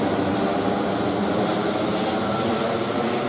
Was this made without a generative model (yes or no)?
yes